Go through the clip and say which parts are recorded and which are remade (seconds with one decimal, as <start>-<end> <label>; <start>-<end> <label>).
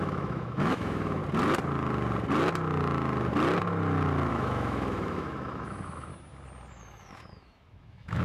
0.0-1.2 remade; 1.2-4.3 recorded; 4.3-6.1 remade; 6.1-6.7 recorded; 6.7-8.2 remade